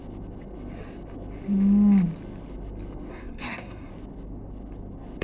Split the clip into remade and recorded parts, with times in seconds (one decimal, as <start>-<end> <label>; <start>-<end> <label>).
0.0-3.1 recorded; 3.1-3.9 remade; 3.9-5.2 recorded